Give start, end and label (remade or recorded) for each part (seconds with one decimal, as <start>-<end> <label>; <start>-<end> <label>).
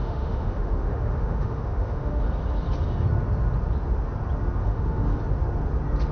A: 0.0-2.2 remade; 2.2-4.6 recorded; 4.6-5.2 remade; 5.2-6.1 recorded